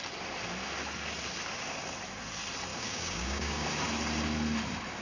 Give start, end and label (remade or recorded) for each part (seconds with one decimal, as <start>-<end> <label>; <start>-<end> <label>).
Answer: 0.0-2.7 recorded; 2.7-3.7 remade; 3.7-5.0 recorded